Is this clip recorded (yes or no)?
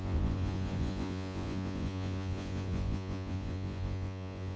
no